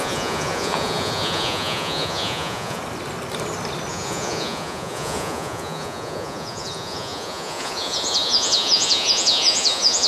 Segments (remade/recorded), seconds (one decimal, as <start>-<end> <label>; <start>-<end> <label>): 0.0-2.8 remade; 2.8-3.9 recorded; 3.9-10.1 remade